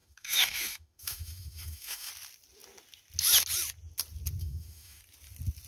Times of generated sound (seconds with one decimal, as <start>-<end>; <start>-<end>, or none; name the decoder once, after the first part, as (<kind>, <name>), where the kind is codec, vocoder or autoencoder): 0.0-2.1 (autoencoder, DAC-VAE); 4.4-5.0

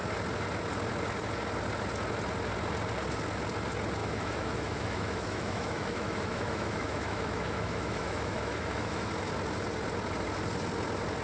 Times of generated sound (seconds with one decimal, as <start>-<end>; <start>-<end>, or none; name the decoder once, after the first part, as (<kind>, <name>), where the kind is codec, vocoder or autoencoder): 4.0-9.1 (autoencoder, DAC-VAE)

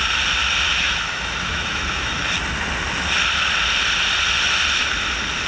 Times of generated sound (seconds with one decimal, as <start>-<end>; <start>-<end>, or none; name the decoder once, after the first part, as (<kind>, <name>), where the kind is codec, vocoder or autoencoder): 0.7-2.2 (autoencoder, DAC-VAE)